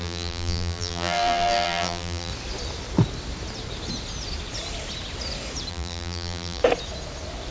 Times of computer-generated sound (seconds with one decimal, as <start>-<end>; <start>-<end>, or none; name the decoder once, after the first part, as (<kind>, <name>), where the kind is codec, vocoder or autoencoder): 0.0-2.3 (vocoder, BigVGAN v2); 5.7-6.6